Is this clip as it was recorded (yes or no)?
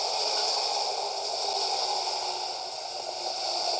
yes